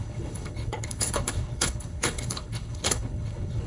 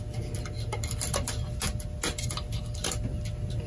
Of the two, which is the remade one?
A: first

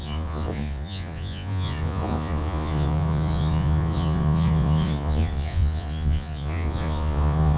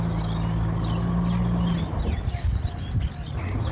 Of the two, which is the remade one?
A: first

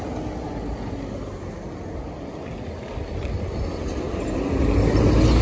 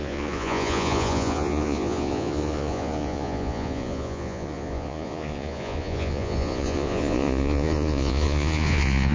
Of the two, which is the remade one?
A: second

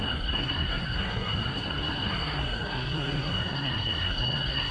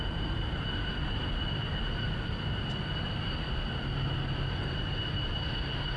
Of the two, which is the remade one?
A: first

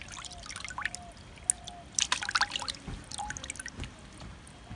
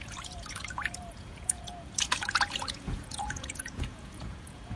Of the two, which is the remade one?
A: second